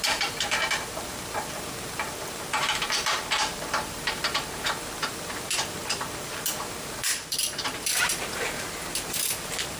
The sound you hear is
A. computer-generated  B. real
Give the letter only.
A